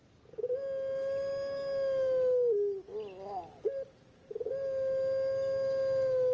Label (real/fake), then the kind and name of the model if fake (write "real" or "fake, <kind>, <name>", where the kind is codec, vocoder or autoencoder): real